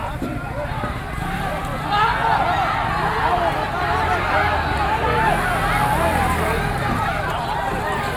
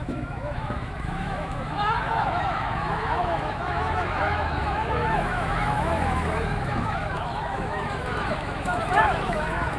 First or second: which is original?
first